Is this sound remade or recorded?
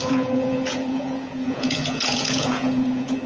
remade